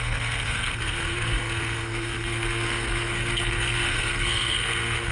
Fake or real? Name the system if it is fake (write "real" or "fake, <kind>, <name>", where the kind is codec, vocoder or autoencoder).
fake, codec, SNAC